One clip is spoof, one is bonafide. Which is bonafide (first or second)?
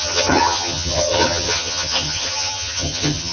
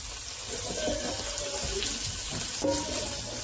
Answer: second